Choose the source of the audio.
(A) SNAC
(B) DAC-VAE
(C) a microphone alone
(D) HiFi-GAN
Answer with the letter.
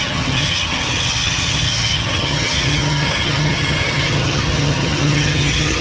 D